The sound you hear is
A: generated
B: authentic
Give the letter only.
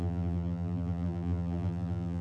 A